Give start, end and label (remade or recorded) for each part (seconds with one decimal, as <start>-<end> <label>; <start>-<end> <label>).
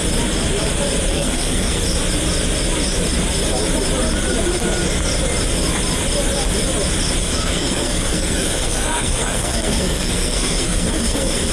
0.0-1.1 recorded; 1.1-1.8 remade; 1.8-7.2 recorded; 7.2-11.5 remade